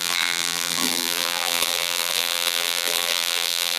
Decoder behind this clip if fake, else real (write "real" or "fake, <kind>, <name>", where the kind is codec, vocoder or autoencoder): fake, vocoder, BigVGAN v2